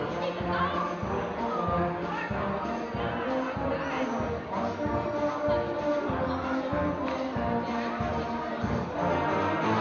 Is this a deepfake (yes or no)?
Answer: no